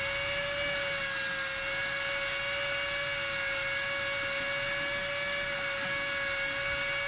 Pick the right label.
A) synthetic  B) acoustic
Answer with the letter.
B